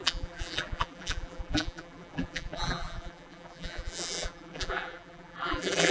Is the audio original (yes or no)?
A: no